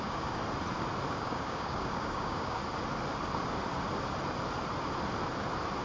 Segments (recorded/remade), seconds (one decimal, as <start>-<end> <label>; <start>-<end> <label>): 0.0-0.4 remade; 0.4-1.1 recorded; 1.1-2.6 remade; 2.6-5.8 recorded